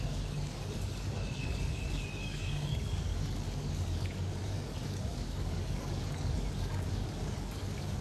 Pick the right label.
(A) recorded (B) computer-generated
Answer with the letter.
B